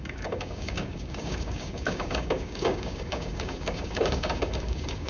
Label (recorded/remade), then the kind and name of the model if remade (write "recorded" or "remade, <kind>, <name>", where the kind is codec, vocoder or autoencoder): remade, codec, DAC